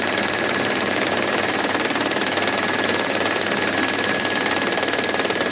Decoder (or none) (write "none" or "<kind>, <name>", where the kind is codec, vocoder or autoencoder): none